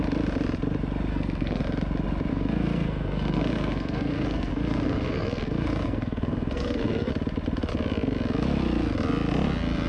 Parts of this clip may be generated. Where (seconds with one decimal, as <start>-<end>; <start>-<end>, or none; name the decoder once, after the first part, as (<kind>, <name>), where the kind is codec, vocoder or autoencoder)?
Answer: 1.1-1.6 (codec, SNAC); 2.3-7.1